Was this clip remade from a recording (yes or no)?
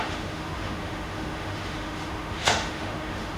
yes